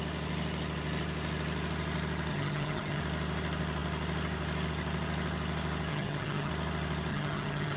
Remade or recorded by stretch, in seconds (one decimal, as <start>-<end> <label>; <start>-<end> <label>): 0.0-2.3 recorded; 2.3-3.0 remade; 3.0-5.9 recorded; 5.9-6.5 remade; 6.5-7.1 recorded; 7.1-7.8 remade